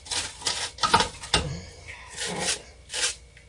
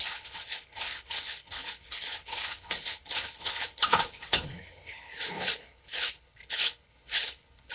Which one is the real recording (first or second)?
first